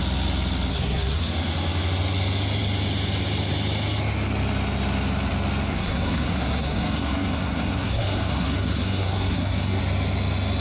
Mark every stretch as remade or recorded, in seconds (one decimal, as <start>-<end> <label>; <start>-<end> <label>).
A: 0.0-0.7 recorded; 0.7-1.3 remade; 1.3-5.7 recorded; 5.7-9.8 remade; 9.8-10.6 recorded